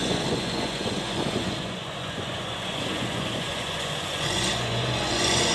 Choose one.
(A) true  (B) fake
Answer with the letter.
B